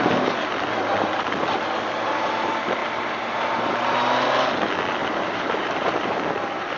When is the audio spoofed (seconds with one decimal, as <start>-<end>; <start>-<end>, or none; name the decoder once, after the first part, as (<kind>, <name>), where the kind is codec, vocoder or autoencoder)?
2.8-3.7 (vocoder, BigVGAN v2); 5.0-6.8